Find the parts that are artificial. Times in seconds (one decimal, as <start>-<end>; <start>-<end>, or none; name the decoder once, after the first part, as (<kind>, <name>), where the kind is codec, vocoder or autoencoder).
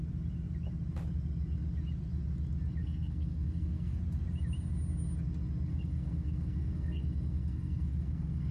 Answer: 2.8-4.0 (codec, SNAC); 5.7-8.5